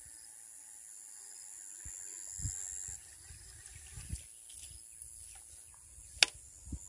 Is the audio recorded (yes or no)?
yes